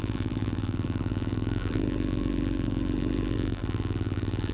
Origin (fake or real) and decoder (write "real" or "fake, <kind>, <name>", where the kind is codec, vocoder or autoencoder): fake, vocoder, BigVGAN v2